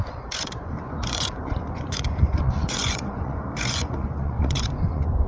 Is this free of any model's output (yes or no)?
no